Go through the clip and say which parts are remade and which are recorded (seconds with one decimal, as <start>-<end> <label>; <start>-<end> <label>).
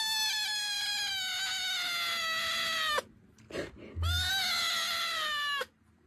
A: 0.0-6.1 recorded